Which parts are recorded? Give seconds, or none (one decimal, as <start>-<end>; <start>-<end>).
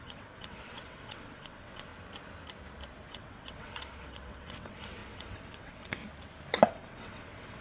1.9-3.1; 6.0-6.7